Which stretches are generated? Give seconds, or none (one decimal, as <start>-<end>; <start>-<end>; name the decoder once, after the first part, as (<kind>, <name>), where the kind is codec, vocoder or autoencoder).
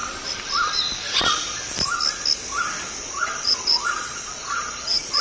3.1-5.2 (vocoder, Vocos)